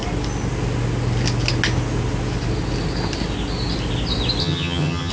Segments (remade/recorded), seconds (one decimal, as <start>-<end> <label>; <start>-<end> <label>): 0.0-4.4 recorded; 4.4-5.1 remade